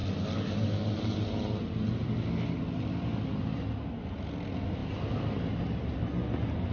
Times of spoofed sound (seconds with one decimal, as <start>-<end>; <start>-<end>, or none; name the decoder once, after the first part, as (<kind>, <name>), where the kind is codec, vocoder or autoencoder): none